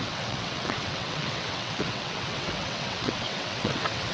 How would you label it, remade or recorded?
remade